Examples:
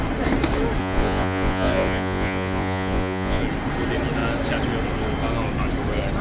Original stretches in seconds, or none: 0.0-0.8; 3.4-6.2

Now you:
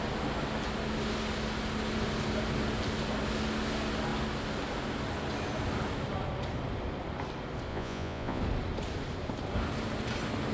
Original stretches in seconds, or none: 0.0-7.7; 8.4-10.5

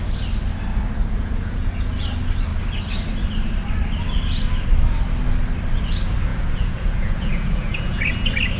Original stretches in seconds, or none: 0.0-1.0; 1.9-6.3; 8.1-8.6

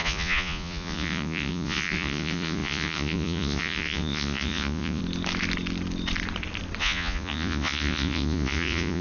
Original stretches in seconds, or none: 5.0-6.8

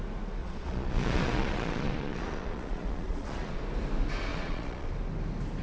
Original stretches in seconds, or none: 0.0-0.4; 3.6-4.3; 4.9-5.6